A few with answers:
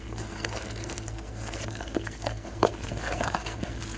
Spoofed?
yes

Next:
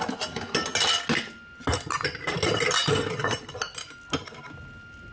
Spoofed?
no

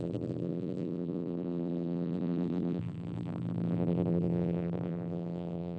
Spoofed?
yes